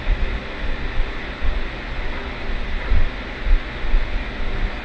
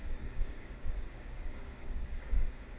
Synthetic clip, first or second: second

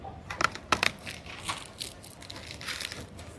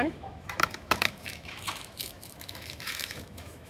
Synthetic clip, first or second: second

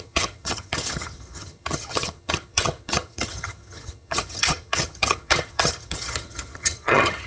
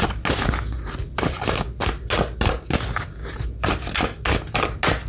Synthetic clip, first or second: first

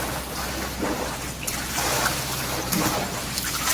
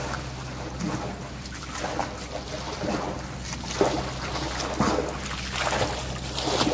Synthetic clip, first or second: first